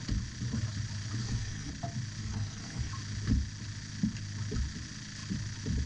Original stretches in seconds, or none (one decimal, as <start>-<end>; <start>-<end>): 0.0-1.2; 1.7-2.2; 2.9-5.9